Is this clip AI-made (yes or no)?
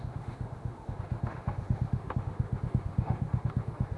yes